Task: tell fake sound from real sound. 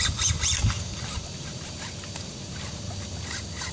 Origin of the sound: real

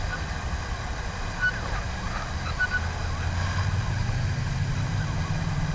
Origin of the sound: real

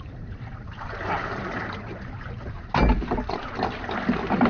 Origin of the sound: real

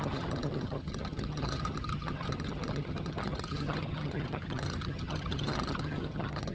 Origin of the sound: fake